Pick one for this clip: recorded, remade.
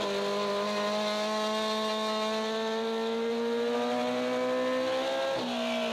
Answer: recorded